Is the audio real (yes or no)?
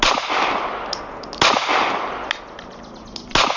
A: yes